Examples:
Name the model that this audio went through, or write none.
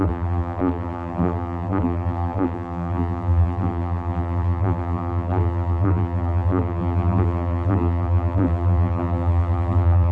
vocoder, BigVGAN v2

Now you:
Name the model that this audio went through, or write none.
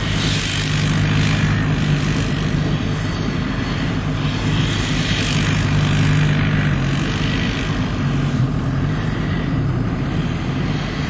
none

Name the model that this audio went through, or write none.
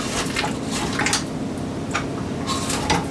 none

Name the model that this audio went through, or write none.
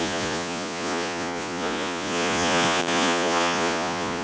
vocoder, Vocos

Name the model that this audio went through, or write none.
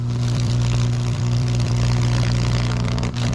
vocoder, BigVGAN v2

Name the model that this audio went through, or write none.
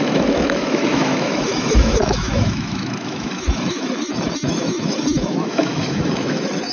autoencoder, DAC-VAE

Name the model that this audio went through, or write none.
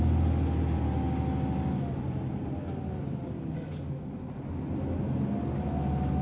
none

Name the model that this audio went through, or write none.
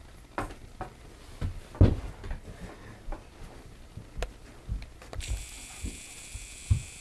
none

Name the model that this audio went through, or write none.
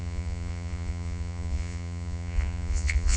vocoder, Vocos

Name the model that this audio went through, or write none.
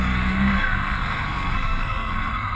codec, SNAC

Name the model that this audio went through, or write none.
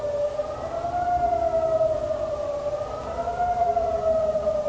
none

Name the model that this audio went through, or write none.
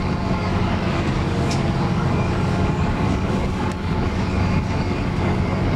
codec, DAC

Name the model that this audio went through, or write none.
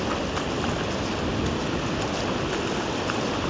none